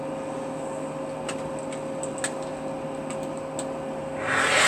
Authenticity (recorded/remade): recorded